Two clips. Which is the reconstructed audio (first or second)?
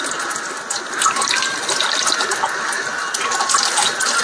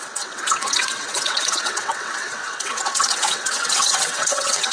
second